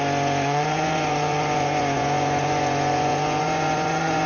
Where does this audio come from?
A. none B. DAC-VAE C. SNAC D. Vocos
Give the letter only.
D